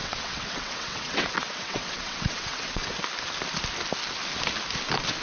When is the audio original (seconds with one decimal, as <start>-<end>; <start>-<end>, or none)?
3.0-5.2